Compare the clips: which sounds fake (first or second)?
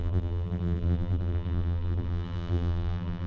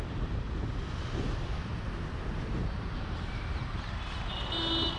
first